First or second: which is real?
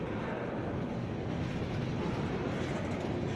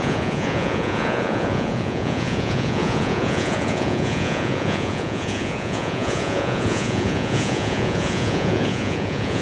first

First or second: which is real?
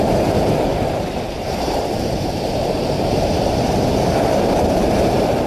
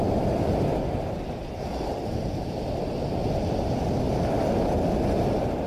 second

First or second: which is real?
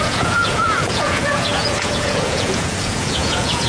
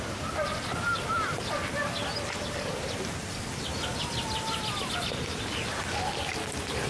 second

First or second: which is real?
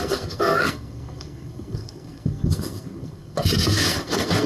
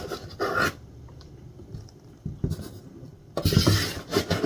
second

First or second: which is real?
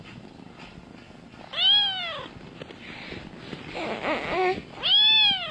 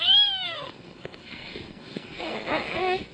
first